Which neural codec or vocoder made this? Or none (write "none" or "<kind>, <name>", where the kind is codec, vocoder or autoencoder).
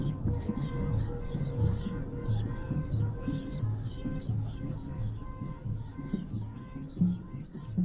codec, DAC